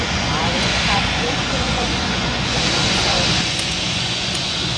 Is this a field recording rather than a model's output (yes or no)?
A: no